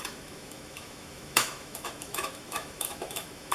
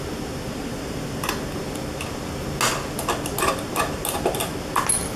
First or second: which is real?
second